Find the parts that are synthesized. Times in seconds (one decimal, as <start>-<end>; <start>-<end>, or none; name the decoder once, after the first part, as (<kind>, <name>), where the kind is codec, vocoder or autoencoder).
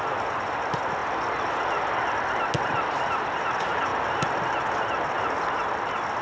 none